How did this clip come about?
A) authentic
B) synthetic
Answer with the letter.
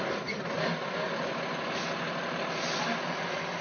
A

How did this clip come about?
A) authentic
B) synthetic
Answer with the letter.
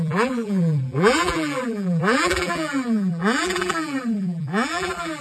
B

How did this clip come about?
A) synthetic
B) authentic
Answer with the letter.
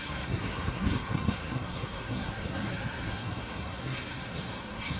A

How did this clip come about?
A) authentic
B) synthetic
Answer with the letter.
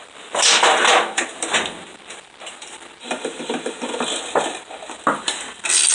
B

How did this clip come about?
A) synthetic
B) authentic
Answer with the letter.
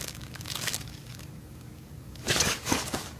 A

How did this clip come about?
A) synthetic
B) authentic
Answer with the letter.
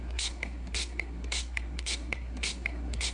A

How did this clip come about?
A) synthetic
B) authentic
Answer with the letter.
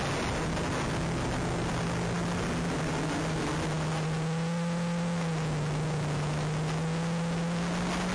B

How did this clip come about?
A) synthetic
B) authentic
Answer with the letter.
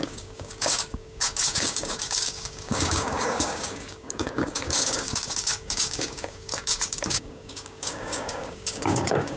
A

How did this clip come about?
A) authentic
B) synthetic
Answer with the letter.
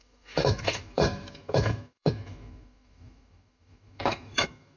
B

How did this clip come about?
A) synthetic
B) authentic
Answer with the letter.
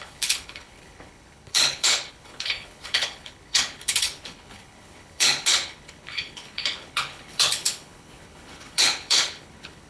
A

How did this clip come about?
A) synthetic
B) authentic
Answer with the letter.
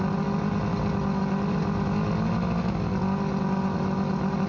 B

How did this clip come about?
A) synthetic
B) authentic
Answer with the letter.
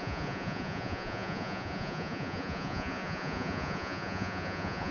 A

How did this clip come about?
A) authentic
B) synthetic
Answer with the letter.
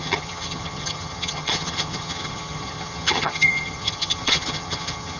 B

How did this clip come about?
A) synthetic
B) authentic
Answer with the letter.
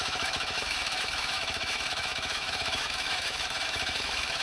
A